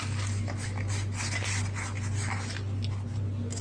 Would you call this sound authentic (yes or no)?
yes